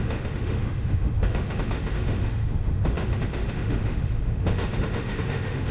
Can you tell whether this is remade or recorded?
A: remade